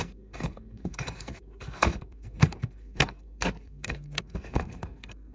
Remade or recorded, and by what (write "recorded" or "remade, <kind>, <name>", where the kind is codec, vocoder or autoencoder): remade, codec, SNAC